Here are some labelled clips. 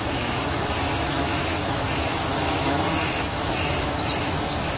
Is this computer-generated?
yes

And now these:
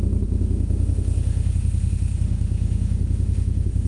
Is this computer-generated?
yes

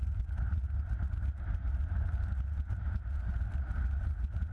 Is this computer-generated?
no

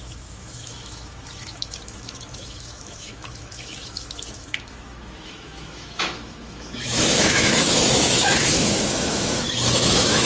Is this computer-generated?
yes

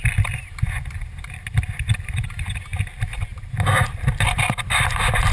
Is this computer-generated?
no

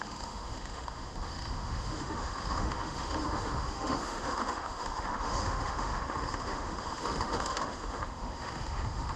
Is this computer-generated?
yes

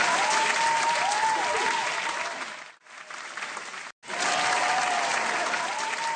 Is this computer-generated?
no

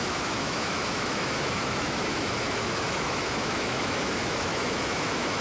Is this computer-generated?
yes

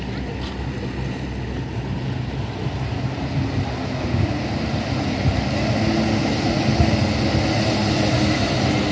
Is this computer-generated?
no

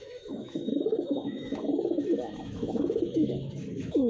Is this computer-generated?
yes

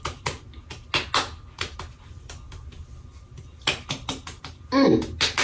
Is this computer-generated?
no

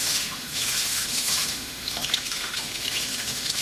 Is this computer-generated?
yes